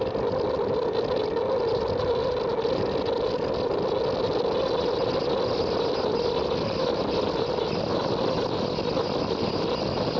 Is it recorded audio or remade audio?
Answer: recorded